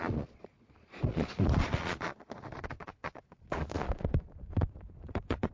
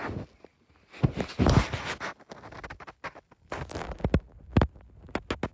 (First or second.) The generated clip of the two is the first